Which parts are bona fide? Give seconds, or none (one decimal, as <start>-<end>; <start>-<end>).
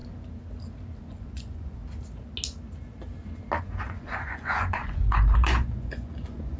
0.0-1.0; 1.8-3.6